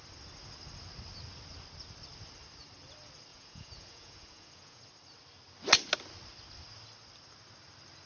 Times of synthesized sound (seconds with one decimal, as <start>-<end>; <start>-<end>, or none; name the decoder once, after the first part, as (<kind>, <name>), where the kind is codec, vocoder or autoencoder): 3.3-4.8 (vocoder, Vocos)